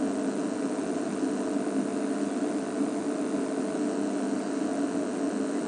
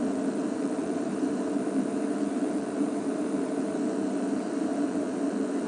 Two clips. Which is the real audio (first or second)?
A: first